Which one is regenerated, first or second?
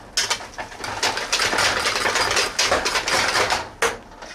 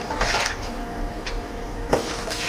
second